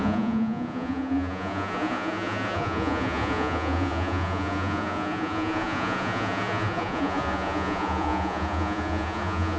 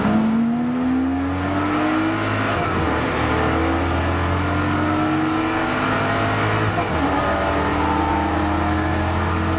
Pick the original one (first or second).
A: second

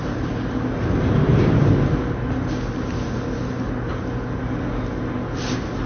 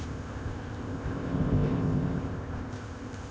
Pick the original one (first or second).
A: first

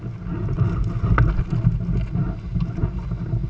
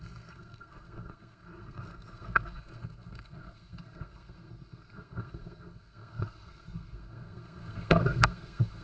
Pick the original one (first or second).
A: first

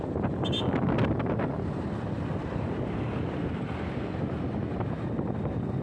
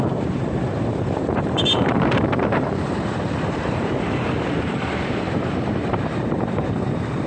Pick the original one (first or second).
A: first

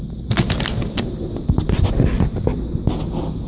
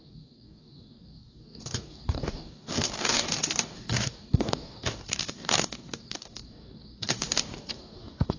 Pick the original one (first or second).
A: first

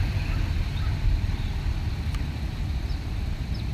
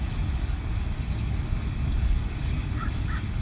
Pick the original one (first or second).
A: first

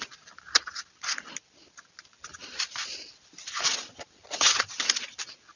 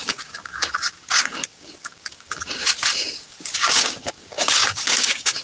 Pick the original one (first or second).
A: first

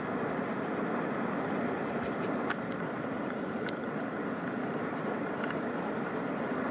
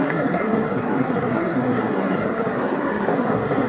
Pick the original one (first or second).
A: first